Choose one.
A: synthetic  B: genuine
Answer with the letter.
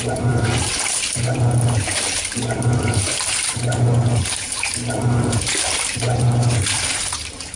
A